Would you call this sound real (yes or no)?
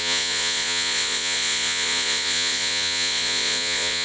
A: no